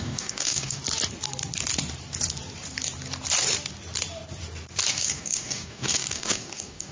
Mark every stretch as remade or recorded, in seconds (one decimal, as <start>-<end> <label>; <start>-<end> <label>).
0.0-0.8 remade; 0.8-4.9 recorded; 4.9-6.9 remade